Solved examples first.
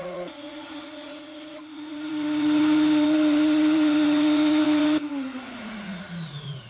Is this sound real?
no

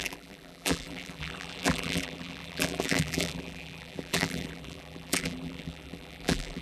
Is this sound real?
no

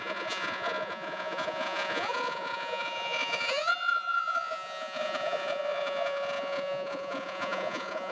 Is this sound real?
no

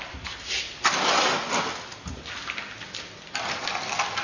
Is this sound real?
yes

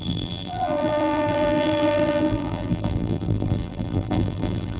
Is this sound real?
no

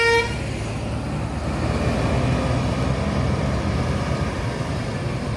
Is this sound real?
yes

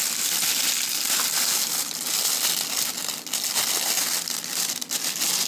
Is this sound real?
yes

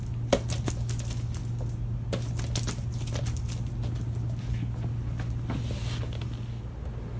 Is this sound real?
yes